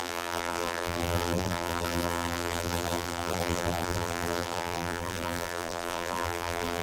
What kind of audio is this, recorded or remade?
remade